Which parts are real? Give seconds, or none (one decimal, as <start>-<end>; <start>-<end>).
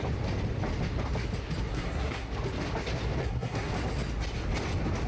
0.0-1.7; 2.3-3.2; 3.7-5.1